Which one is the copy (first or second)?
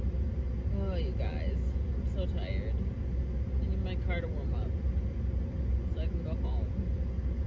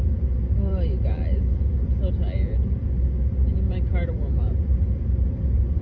second